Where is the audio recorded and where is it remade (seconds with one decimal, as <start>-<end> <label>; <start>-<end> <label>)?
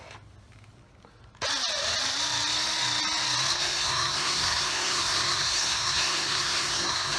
0.0-3.5 recorded; 3.5-7.2 remade